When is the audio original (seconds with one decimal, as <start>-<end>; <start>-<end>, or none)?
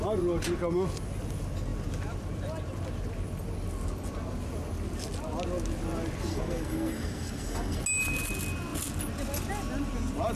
0.0-6.3; 7.8-10.4